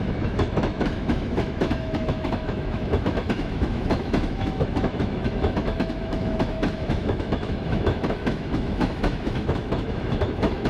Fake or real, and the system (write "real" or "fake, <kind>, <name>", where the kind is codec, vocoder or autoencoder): fake, autoencoder, DAC-VAE